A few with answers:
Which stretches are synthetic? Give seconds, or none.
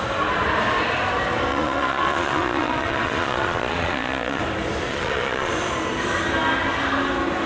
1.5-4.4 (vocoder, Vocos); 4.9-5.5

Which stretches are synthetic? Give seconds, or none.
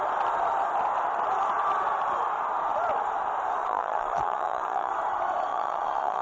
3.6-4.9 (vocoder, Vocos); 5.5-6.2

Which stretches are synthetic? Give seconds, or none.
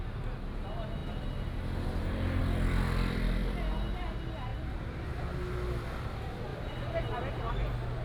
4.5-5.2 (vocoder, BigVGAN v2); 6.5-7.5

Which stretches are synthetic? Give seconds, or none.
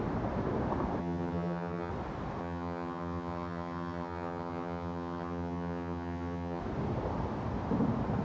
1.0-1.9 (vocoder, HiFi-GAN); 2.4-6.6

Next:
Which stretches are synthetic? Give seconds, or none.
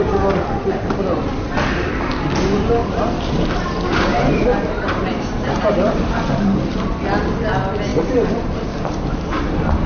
2.8-6.8 (vocoder, BigVGAN v2); 7.9-9.5